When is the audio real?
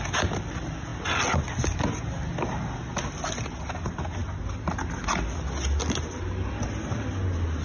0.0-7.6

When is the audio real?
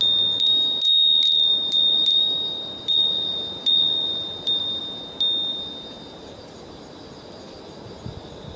0.0-1.5; 4.8-5.5; 8.1-8.6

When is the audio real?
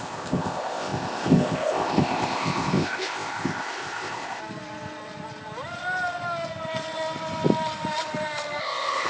4.4-8.6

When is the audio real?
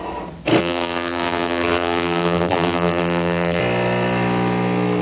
0.0-0.6; 3.6-5.0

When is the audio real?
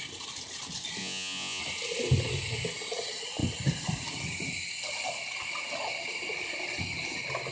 0.0-1.0; 1.6-7.5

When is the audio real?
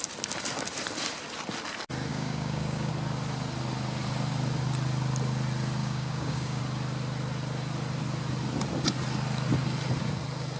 0.0-2.1; 2.9-5.8; 6.6-10.6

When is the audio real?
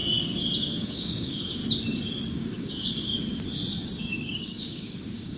0.0-0.6; 1.6-2.3; 3.1-4.0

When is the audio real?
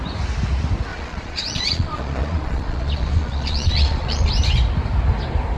0.0-0.9; 4.3-5.6